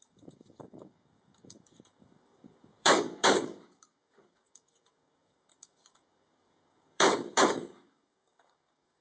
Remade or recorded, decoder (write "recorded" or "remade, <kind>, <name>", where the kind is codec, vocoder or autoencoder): remade, codec, DAC